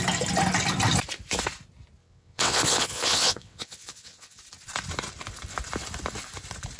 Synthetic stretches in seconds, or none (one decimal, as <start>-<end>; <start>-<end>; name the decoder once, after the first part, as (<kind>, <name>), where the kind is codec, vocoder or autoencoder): 2.0-4.4 (vocoder, WaveNeXt)